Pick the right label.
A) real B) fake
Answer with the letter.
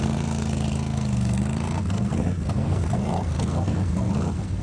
B